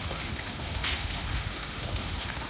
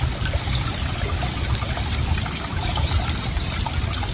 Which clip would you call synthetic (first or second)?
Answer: first